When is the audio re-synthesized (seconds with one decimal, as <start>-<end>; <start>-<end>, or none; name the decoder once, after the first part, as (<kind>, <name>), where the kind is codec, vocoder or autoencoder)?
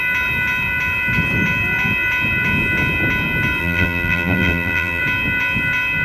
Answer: 3.6-5.0 (vocoder, BigVGAN v2)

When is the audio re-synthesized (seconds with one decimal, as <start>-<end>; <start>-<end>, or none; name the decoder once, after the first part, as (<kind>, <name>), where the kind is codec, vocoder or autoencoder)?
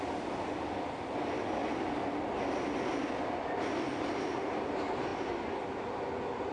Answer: none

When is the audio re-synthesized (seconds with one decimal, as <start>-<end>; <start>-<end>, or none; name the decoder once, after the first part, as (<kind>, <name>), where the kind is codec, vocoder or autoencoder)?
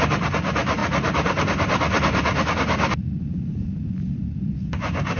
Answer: 0.0-0.8 (vocoder, BigVGAN v2); 3.9-5.2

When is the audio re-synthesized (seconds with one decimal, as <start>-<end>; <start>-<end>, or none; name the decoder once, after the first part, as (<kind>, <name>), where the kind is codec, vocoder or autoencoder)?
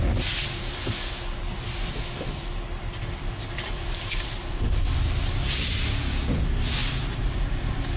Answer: 0.0-8.0 (vocoder, BigVGAN v2)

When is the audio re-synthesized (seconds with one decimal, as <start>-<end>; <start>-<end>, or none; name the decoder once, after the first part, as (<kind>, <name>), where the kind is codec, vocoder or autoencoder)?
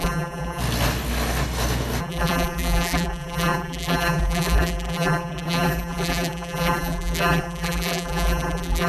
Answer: 0.0-0.6 (vocoder, BigVGAN v2); 2.0-8.9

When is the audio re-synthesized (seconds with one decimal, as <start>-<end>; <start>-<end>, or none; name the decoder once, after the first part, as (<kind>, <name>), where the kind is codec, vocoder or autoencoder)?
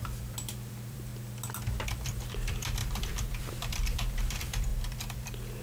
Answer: 0.0-1.1 (vocoder, BigVGAN v2); 1.8-5.6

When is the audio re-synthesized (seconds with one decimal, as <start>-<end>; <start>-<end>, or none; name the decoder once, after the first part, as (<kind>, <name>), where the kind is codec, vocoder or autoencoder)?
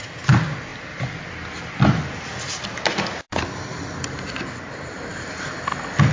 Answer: 5.1-5.6 (vocoder, BigVGAN v2)